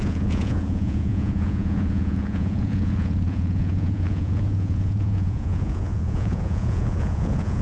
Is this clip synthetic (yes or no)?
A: yes